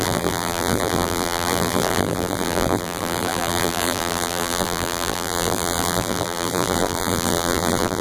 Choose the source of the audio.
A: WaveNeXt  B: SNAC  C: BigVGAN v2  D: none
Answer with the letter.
C